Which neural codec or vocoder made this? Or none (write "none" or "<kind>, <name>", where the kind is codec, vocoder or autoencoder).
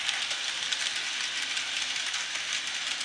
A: none